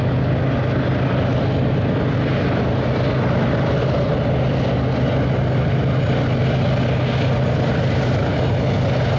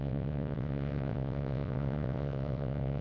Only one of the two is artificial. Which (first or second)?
second